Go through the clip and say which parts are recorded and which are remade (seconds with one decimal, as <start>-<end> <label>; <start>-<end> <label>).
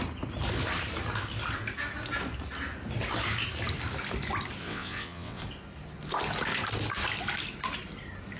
0.0-4.6 recorded; 4.6-5.4 remade; 5.4-8.4 recorded